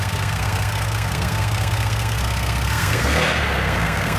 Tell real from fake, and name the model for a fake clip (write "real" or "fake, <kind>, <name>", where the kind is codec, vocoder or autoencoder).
fake, codec, SNAC